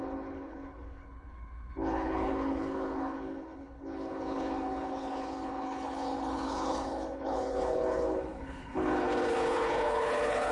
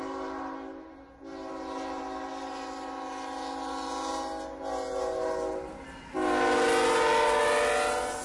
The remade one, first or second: first